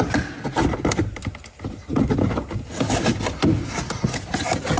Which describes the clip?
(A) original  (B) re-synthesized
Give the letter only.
A